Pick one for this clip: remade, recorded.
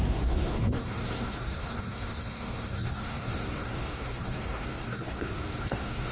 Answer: remade